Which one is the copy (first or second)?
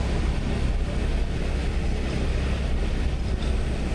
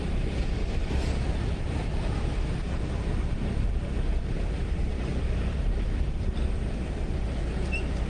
second